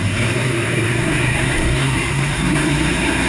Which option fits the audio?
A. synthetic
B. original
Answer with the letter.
A